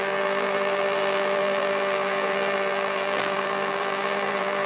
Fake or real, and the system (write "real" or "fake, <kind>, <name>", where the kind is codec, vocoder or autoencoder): fake, vocoder, BigVGAN v2